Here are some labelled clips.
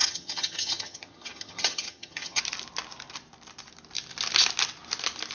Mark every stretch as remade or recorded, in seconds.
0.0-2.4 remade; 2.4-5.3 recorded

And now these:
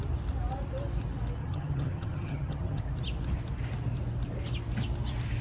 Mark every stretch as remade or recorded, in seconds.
0.0-1.4 recorded; 1.4-2.8 remade; 2.8-5.4 recorded

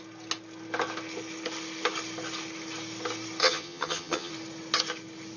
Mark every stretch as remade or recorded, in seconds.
0.0-3.4 recorded; 3.4-4.3 remade; 4.3-5.4 recorded